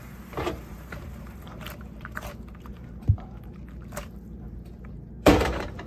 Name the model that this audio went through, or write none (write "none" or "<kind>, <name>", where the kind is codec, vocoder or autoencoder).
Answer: vocoder, BigVGAN v2